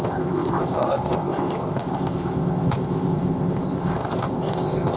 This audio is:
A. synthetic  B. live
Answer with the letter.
A